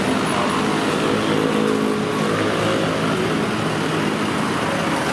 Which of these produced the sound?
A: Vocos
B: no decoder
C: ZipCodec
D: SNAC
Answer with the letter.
B